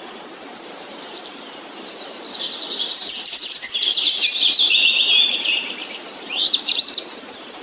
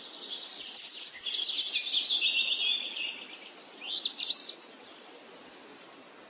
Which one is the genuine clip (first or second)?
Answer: second